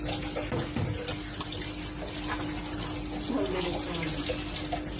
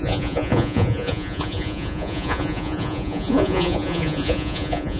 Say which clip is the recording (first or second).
first